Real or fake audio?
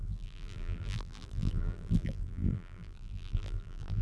fake